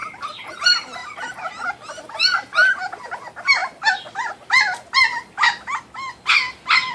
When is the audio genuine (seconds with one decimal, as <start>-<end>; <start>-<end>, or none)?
0.0-6.9